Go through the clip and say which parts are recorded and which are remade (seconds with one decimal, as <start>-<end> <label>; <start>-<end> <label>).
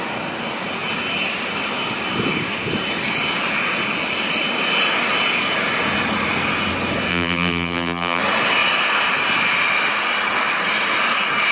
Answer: 0.0-7.1 recorded; 7.1-8.2 remade; 8.2-11.5 recorded